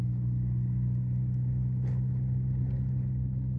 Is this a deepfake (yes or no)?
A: no